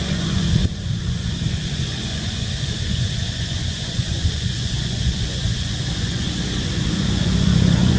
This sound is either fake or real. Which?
fake